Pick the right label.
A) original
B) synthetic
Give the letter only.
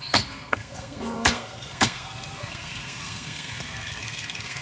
B